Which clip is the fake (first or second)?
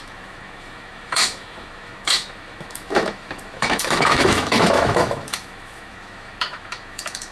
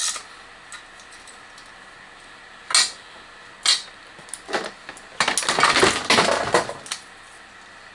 first